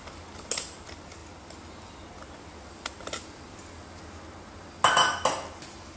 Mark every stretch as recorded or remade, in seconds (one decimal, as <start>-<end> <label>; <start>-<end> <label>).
0.0-6.0 recorded